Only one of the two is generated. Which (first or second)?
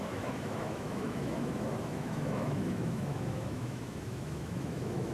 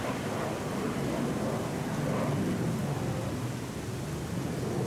first